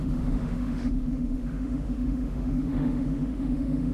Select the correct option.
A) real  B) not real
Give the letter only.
B